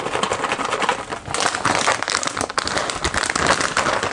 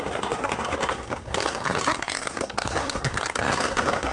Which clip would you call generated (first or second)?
second